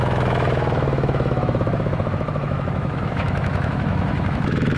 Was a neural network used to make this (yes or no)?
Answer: yes